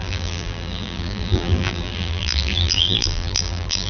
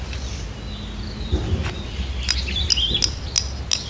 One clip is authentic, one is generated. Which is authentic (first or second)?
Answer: second